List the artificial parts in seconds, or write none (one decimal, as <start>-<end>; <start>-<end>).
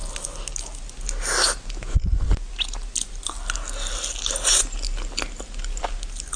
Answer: none